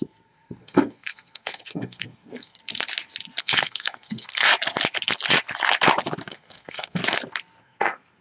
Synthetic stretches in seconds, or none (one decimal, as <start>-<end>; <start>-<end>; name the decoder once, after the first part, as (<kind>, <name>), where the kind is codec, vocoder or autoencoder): 0.0-2.6 (codec, SNAC); 3.4-4.5; 6.3-7.0; 7.6-8.2